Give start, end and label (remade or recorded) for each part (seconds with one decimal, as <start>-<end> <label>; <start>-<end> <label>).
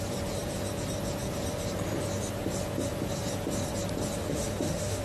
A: 0.0-4.2 recorded; 4.2-5.0 remade